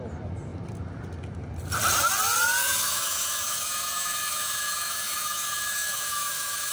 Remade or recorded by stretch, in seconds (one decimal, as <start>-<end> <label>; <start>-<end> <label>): 0.0-2.6 recorded; 2.6-6.7 remade